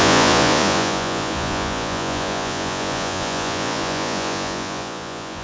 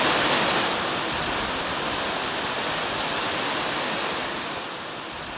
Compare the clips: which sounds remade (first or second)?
first